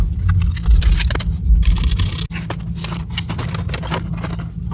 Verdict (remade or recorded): recorded